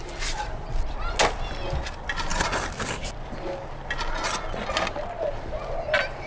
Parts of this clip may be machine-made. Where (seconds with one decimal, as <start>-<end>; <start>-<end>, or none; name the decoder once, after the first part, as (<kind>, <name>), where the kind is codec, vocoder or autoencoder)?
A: none